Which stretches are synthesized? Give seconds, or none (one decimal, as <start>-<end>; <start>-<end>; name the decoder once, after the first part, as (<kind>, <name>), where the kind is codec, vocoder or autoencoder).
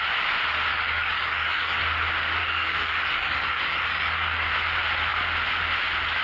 0.7-1.8 (codec, DAC); 2.4-4.5